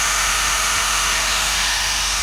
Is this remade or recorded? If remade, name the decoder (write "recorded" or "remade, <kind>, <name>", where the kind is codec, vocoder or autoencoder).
remade, autoencoder, DAC-VAE